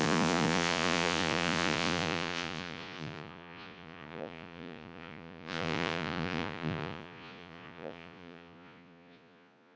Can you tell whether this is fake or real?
fake